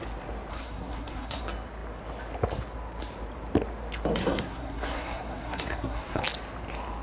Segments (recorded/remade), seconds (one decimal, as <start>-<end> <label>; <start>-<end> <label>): 0.0-0.5 recorded; 0.5-1.4 remade; 1.4-4.2 recorded; 4.2-6.2 remade; 6.2-7.0 recorded